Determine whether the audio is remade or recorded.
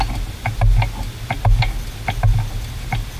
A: recorded